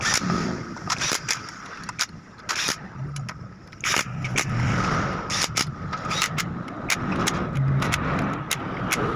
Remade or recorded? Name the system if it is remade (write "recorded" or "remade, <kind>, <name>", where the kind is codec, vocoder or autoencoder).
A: recorded